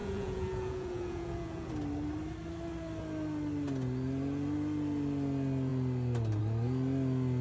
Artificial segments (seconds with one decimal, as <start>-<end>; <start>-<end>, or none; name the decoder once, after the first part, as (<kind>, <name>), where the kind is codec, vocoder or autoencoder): 0.0-1.7 (vocoder, Vocos)